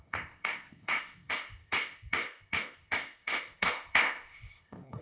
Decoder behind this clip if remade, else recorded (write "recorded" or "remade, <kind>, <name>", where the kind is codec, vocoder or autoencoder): remade, codec, ZipCodec